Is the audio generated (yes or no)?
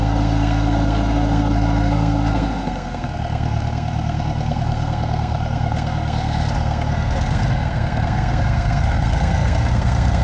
yes